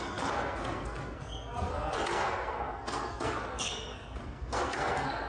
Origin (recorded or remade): remade